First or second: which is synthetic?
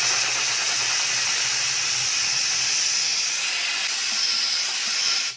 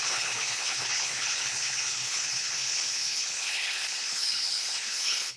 second